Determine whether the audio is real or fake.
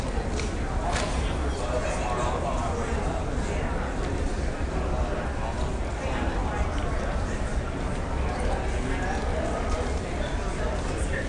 real